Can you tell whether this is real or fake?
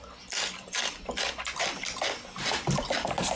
real